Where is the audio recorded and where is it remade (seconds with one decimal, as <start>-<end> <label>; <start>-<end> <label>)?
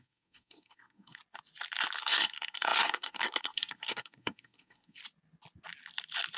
0.0-1.2 remade; 1.2-2.0 recorded; 2.0-5.0 remade; 5.0-6.4 recorded